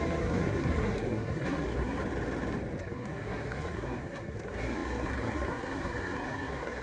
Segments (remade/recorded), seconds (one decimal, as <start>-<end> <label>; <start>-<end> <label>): 0.0-2.0 remade; 2.0-2.8 recorded; 2.8-6.8 remade